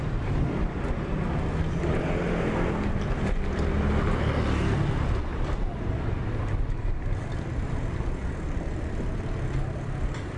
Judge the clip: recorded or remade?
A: recorded